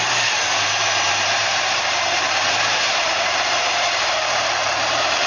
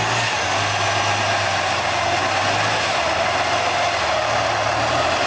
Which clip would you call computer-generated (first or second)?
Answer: first